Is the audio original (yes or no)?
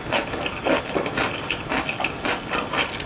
yes